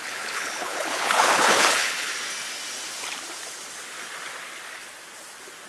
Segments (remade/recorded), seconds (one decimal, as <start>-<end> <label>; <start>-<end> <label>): 0.0-2.1 remade; 2.1-5.7 recorded